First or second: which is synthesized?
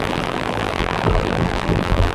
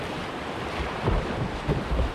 first